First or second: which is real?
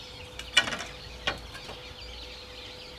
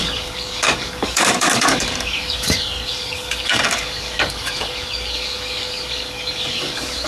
first